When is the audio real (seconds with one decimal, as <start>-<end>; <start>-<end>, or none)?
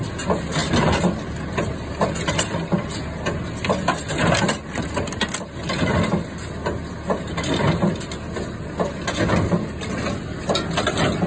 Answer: 0.0-11.3